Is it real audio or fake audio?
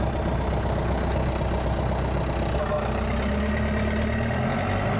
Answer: real